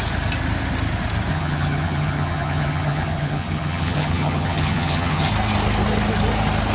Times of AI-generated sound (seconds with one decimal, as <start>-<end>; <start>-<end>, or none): 1.3-5.3